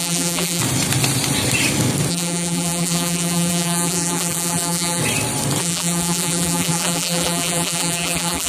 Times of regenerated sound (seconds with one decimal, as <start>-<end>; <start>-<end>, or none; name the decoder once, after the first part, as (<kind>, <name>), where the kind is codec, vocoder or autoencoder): 0.0-0.6 (vocoder, BigVGAN v2); 2.1-5.0; 5.6-8.5